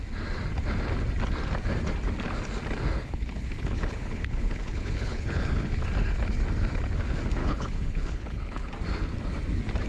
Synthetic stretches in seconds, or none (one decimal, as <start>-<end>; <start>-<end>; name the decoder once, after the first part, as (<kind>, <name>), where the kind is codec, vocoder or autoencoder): 3.0-5.8 (codec, HILCodec); 7.4-8.7